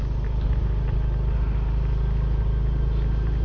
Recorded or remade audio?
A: recorded